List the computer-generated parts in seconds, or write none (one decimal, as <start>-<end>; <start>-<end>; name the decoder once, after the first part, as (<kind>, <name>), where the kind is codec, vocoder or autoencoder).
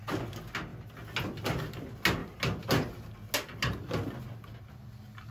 none